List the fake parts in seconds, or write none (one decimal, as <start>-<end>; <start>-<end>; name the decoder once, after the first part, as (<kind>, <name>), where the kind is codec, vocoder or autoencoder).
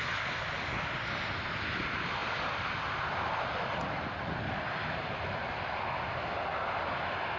none